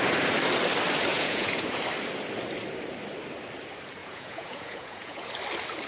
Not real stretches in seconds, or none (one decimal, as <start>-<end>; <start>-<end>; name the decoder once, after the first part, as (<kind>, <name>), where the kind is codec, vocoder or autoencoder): 1.1-1.8 (vocoder, Vocos); 4.0-5.3